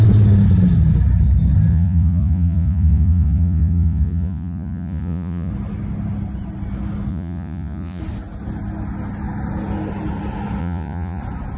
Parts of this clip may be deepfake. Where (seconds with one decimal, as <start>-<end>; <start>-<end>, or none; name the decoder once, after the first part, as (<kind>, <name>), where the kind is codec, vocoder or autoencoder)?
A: 1.7-5.5 (vocoder, Vocos); 7.1-8.0; 10.6-11.2